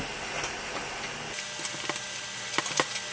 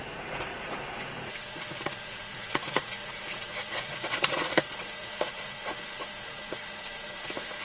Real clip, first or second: first